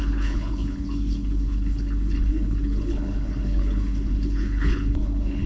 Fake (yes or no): yes